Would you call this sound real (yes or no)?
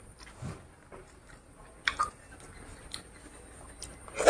yes